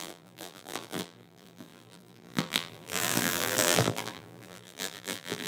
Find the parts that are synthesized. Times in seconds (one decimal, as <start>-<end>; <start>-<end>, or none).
0.0-5.5